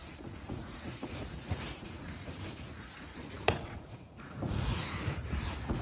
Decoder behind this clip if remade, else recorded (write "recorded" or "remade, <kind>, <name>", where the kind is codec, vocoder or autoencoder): remade, vocoder, Vocos